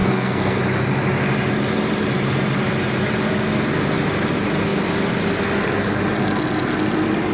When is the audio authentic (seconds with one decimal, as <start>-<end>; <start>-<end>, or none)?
0.6-7.3